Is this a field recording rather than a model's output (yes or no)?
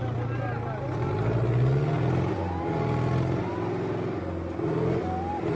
yes